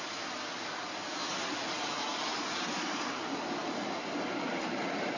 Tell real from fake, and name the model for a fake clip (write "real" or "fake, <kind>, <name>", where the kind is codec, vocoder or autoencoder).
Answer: real